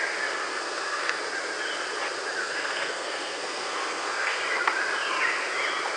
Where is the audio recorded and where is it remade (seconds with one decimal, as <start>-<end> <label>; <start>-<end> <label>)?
0.0-0.5 recorded; 0.5-1.2 remade; 1.2-2.4 recorded; 2.4-4.4 remade; 4.4-6.0 recorded